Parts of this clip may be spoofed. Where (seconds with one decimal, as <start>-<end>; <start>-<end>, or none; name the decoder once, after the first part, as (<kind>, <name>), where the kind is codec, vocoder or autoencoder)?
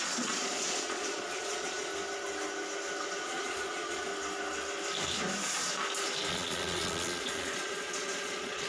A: 0.0-1.9 (vocoder, Vocos); 3.2-4.1; 6.3-8.7